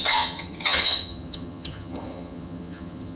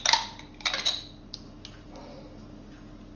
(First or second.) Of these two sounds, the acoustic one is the second